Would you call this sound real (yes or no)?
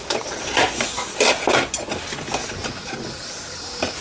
yes